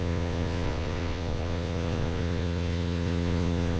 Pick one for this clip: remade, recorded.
remade